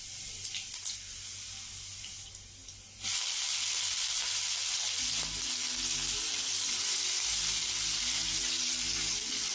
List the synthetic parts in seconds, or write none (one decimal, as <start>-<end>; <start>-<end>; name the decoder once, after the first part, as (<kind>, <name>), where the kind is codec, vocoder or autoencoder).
none